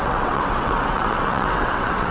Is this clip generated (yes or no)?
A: yes